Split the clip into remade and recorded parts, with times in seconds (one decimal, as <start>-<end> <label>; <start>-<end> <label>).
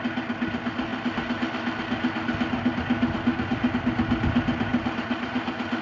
0.0-4.7 recorded; 4.7-5.8 remade